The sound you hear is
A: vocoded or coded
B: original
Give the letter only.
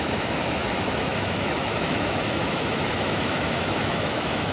A